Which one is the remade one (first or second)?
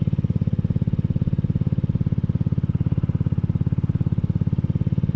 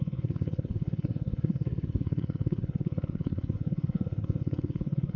second